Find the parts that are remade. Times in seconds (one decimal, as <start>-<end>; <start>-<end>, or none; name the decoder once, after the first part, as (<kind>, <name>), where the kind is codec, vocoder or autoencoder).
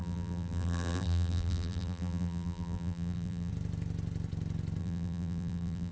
0.0-3.5 (vocoder, BigVGAN v2); 4.8-5.9